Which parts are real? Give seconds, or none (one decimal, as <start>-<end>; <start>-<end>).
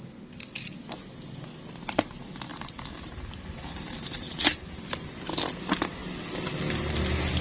0.0-2.5; 5.4-7.4